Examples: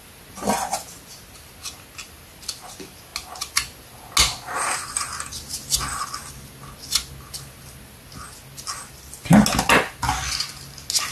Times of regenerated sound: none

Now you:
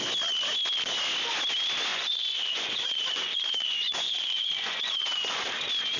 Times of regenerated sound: 1.9-5.5

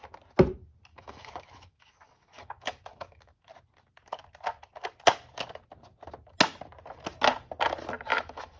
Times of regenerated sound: 0.9-3.5; 8.1-8.6

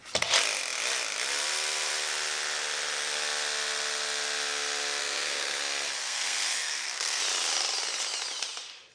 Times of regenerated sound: 5.0-5.6; 6.0-7.2